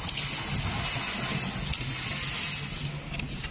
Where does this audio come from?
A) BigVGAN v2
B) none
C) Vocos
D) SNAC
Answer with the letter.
B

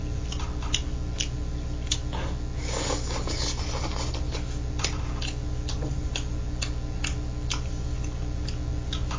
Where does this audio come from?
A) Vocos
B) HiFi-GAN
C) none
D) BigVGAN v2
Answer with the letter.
C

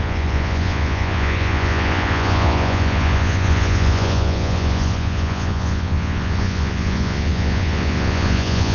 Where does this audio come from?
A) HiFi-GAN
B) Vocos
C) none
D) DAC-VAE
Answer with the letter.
B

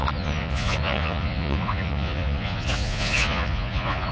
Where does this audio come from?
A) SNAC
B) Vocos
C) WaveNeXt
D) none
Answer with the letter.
B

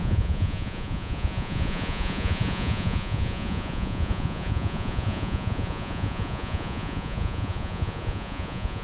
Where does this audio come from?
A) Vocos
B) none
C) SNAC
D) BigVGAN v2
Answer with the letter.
A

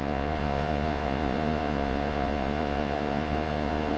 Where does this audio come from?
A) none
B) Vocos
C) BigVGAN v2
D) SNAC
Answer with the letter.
B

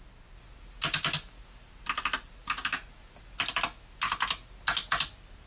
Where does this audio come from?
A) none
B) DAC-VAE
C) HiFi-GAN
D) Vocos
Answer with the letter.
A